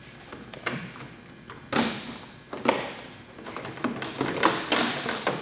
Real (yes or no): yes